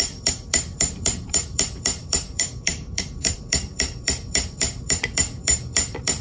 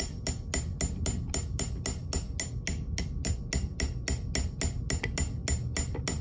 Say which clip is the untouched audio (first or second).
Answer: second